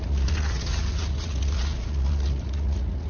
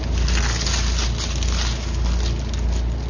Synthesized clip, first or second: first